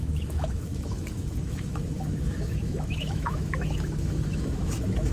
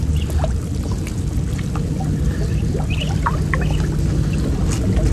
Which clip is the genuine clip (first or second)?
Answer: second